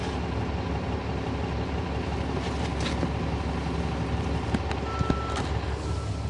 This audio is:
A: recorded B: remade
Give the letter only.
A